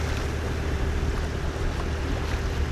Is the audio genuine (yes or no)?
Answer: yes